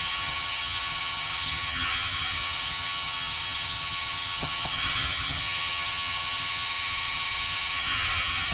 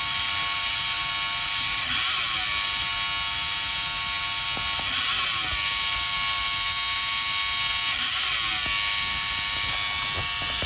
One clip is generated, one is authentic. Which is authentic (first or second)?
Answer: second